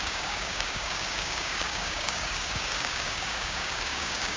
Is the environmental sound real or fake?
fake